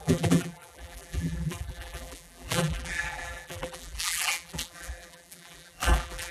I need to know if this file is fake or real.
fake